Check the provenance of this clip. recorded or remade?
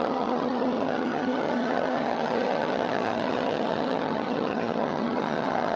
remade